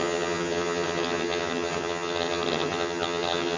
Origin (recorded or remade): remade